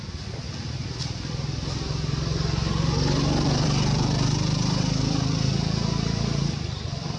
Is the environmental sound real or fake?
fake